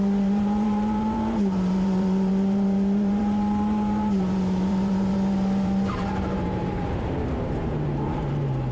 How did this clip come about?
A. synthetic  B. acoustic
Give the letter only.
A